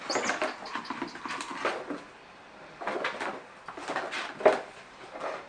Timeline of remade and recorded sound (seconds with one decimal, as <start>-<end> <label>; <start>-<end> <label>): 0.0-5.5 recorded